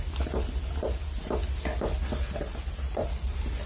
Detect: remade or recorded recorded